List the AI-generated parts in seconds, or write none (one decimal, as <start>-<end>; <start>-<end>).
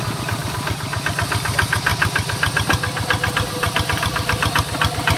none